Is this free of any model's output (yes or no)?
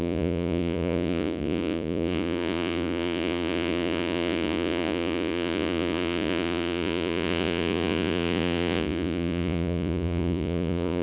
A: no